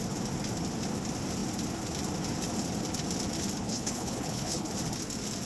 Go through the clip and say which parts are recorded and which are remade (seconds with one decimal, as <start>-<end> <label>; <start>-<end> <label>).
0.0-3.6 recorded; 3.6-4.7 remade; 4.7-5.5 recorded